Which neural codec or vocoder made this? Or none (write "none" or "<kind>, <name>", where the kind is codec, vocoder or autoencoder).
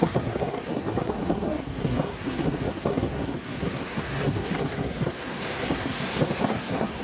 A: codec, SNAC